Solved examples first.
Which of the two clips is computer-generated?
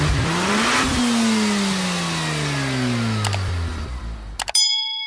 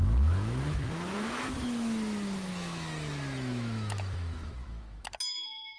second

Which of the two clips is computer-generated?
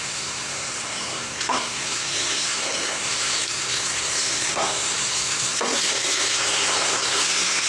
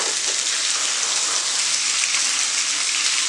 first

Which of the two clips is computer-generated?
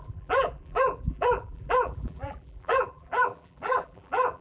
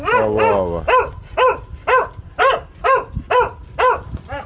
first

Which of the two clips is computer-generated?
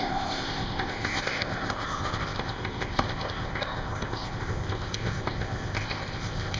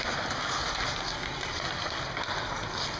first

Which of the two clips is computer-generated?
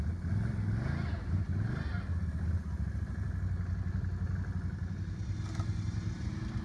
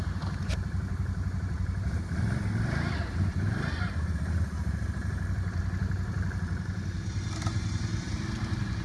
second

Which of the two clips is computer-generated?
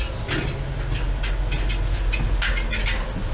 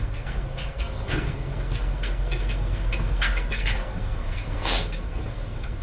second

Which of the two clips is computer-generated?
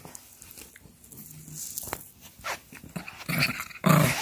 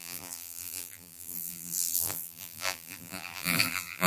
second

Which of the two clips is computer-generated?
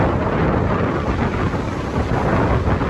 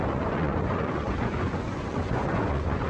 second